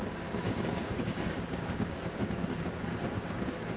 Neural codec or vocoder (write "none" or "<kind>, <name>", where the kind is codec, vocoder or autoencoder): codec, DAC